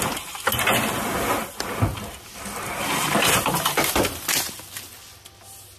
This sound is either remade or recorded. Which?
recorded